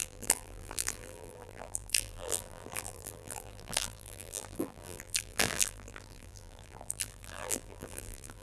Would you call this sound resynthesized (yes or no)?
yes